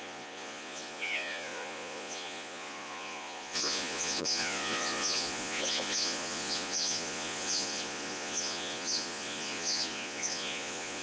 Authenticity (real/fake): fake